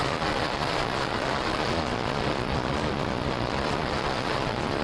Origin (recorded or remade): remade